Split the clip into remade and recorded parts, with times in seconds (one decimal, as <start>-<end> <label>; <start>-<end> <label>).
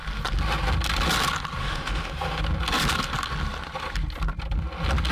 0.0-1.6 recorded; 1.6-2.4 remade; 2.4-5.1 recorded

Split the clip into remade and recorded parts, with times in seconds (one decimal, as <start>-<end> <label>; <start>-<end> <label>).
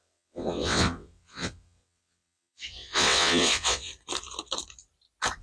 0.0-3.9 remade; 3.9-5.4 recorded